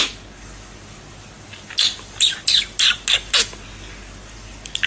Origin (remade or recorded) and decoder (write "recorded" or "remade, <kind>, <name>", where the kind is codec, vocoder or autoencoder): recorded